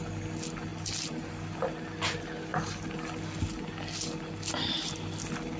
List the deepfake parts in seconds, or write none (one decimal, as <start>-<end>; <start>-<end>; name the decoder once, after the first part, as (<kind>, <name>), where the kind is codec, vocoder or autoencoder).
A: none